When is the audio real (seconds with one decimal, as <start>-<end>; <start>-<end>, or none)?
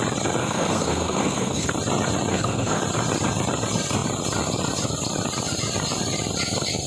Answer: 0.0-0.4; 1.7-2.3; 2.8-6.9